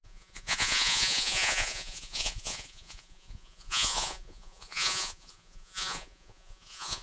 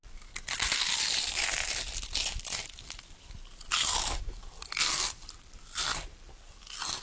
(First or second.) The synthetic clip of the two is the first